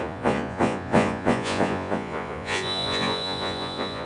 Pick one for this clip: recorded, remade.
remade